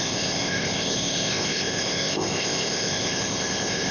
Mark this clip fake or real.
fake